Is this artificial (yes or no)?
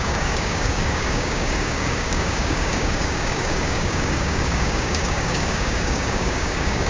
yes